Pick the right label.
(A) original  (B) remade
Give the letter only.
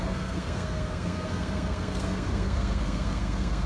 B